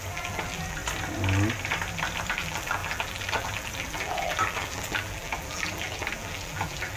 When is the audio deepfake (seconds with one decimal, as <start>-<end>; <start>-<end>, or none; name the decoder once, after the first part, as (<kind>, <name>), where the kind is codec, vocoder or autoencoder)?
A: 0.0-0.8 (vocoder, BigVGAN v2); 2.3-7.0